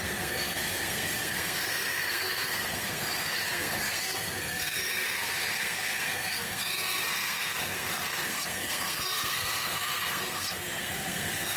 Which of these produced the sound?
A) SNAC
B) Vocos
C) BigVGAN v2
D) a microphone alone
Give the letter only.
A